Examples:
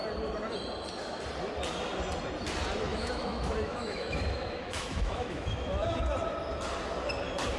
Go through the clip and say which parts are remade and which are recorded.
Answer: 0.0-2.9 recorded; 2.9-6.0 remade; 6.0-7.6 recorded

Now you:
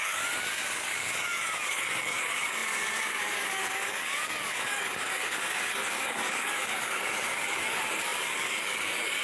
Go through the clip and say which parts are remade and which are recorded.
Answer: 0.0-9.2 remade

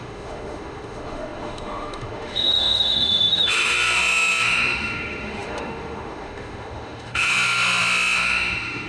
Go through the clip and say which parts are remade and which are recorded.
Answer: 0.0-8.9 remade

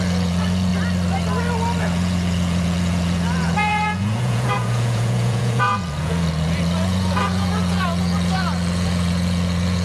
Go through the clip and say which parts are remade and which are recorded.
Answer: 0.0-0.7 remade; 0.7-1.8 recorded; 1.8-9.8 remade